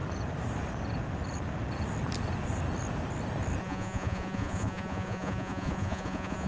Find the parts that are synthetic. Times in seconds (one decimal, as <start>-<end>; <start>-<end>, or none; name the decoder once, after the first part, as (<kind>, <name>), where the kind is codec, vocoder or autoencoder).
3.6-6.5 (vocoder, Vocos)